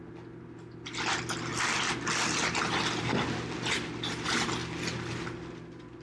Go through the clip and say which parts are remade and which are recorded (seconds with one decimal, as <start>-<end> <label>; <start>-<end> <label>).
0.0-6.0 recorded